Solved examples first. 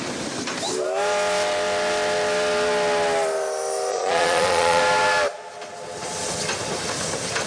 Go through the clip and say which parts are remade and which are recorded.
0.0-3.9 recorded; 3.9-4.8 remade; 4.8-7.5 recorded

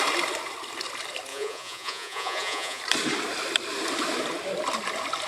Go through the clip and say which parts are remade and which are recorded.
0.0-1.3 recorded; 1.3-2.8 remade; 2.8-5.3 recorded

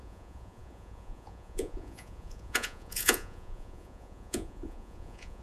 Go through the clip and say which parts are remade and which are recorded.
0.0-5.4 remade

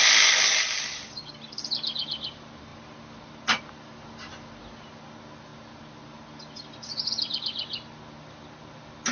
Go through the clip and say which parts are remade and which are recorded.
0.0-9.1 recorded

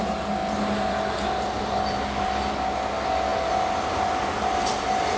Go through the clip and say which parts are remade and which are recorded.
0.0-5.2 recorded

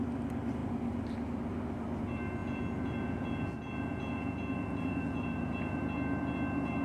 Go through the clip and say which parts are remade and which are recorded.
0.0-2.4 recorded; 2.4-5.8 remade; 5.8-6.8 recorded

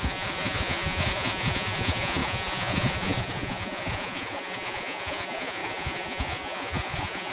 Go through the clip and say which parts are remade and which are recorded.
0.0-7.3 remade

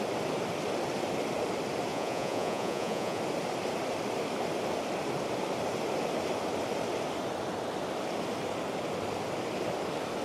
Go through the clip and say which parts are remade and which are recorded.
0.0-1.9 recorded; 1.9-3.2 remade; 3.2-10.2 recorded